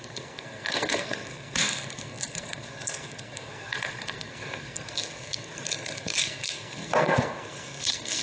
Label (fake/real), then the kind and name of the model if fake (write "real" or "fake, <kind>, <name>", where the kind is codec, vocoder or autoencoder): fake, codec, SNAC